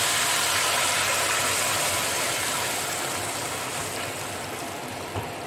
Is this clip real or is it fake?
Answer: real